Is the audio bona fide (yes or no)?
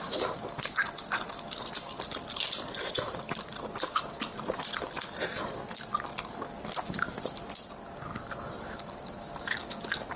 yes